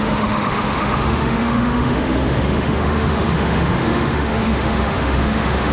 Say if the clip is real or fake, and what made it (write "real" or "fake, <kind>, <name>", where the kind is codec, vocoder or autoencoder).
fake, autoencoder, DAC-VAE